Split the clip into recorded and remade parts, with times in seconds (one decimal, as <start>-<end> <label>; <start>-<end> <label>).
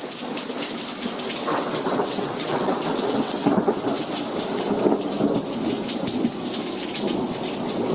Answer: 0.0-1.4 recorded; 1.4-3.7 remade; 3.7-7.9 recorded